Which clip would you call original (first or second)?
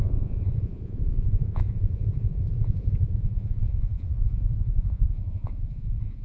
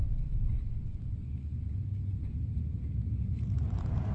second